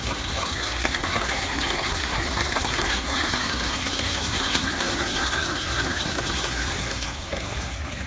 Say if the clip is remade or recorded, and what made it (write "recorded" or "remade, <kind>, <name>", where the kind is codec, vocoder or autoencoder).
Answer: remade, codec, SNAC